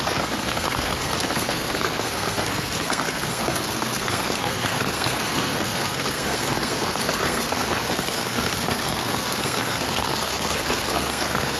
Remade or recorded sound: remade